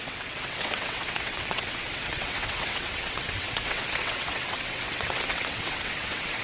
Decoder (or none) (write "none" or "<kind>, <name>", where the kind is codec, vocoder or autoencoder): vocoder, WaveNeXt